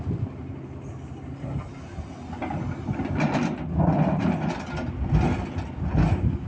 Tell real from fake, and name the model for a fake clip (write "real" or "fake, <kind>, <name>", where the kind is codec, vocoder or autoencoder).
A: real